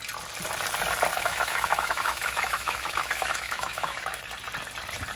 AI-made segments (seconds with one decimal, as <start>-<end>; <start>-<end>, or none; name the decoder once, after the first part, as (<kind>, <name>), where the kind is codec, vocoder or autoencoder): 1.1-4.2 (autoencoder, DAC-VAE)